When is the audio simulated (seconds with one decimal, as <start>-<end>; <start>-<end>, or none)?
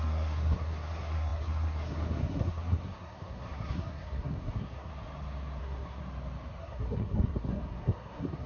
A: 0.0-4.9; 5.6-6.0; 6.6-8.5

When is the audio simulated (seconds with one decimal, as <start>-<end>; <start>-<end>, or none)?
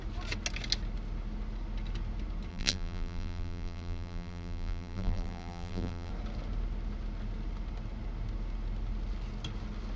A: 2.5-6.1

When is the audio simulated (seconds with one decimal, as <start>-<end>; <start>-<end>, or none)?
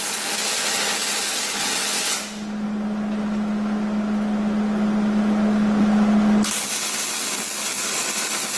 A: none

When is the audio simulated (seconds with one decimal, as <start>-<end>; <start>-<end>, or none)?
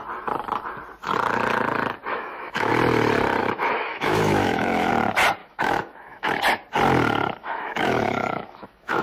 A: 2.1-2.7; 3.4-4.9; 5.4-6.4; 7.4-9.0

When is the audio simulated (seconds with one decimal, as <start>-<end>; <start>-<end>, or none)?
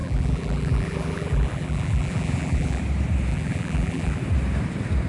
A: 0.0-2.8; 3.3-4.2